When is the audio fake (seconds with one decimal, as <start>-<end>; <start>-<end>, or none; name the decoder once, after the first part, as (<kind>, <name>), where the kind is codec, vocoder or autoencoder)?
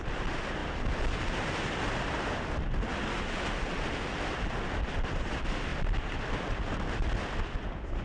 none